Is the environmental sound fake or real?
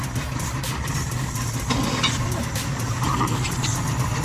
real